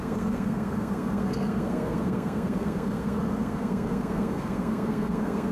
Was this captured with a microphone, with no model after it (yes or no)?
no